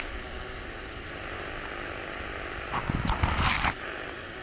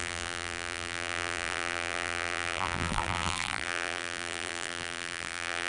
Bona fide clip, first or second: first